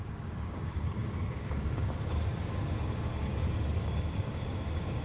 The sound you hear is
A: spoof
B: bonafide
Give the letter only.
A